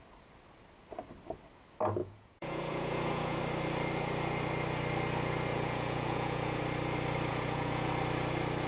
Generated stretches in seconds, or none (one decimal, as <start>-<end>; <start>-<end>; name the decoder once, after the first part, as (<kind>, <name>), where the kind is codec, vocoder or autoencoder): 2.0-3.4 (vocoder, Vocos); 5.5-6.6; 7.3-7.9